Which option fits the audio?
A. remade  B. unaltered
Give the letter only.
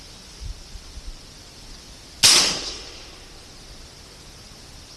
B